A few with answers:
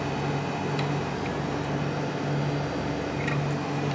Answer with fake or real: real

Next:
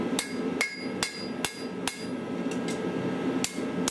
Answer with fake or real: real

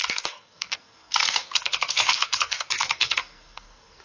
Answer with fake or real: fake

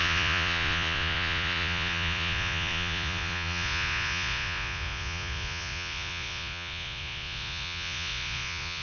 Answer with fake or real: fake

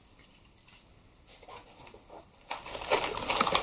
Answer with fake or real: real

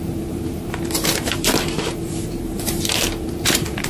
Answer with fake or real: fake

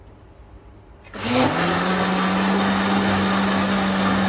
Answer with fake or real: real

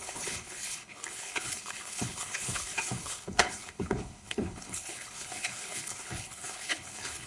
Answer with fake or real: fake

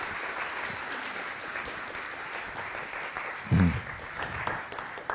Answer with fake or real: real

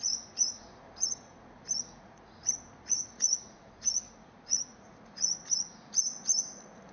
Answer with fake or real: fake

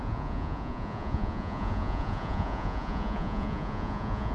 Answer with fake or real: fake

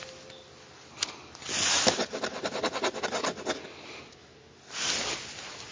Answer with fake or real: real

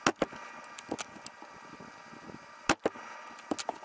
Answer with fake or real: real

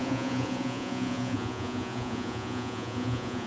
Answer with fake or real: fake